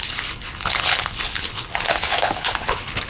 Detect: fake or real fake